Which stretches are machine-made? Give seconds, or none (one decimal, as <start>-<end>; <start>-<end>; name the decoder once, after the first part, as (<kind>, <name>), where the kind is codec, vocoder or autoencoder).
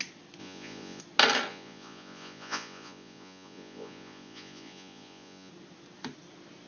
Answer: 0.4-1.0 (vocoder, Vocos); 1.5-5.5